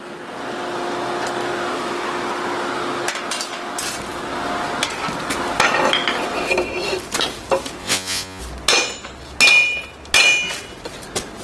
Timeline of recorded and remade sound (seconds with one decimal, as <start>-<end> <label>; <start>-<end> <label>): 0.0-7.8 recorded; 7.8-8.4 remade; 8.4-11.4 recorded